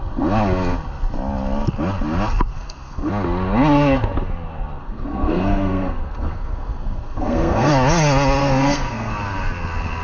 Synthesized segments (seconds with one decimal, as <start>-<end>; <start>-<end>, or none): 2.5-3.1; 4.8-7.7; 8.4-9.1

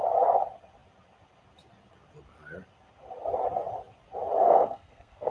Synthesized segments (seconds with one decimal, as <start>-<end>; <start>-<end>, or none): 4.4-5.3

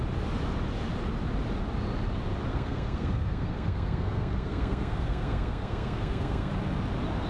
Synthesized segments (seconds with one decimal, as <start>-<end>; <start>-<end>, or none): 2.5-6.5

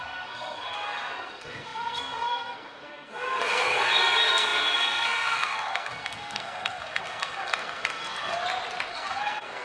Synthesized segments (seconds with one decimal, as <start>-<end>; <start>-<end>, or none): 0.0-8.4; 8.9-9.6